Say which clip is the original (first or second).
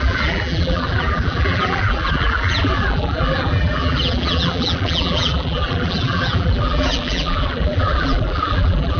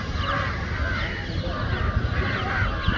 second